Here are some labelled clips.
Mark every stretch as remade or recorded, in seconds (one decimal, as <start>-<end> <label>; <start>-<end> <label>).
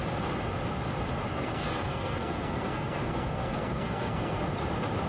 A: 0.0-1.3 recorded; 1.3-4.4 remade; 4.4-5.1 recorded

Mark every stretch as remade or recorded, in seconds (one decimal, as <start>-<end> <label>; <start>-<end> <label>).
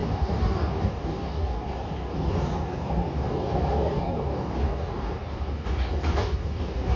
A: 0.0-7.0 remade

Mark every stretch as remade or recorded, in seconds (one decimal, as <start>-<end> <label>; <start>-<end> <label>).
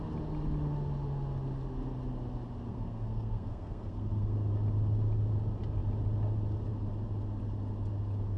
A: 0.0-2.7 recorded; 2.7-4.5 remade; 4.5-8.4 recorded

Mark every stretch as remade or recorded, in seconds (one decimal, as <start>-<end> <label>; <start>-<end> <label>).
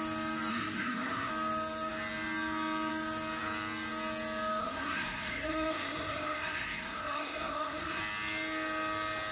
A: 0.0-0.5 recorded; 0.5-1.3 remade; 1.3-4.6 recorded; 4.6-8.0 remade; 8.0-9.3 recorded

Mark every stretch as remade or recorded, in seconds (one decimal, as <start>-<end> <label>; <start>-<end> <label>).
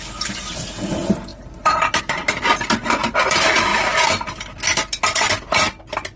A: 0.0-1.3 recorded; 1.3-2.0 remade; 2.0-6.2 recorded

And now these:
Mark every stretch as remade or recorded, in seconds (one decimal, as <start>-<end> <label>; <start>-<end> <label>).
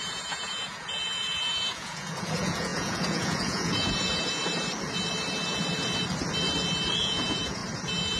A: 0.0-4.4 remade; 4.4-7.0 recorded; 7.0-7.6 remade; 7.6-8.2 recorded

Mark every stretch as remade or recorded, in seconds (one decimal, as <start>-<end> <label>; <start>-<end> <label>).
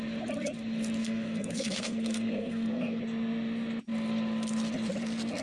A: 0.0-1.0 recorded; 1.0-3.0 remade; 3.0-5.4 recorded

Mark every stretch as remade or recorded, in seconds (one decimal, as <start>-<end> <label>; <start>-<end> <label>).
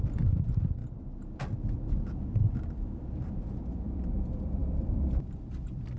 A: 0.0-0.8 remade; 0.8-1.7 recorded; 1.7-6.0 remade